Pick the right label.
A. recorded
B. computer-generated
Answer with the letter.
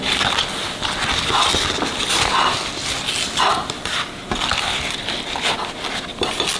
A